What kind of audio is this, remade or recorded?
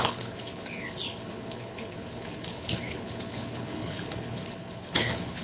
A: remade